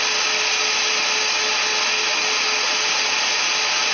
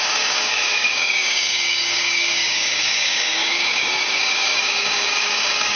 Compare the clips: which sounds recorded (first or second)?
first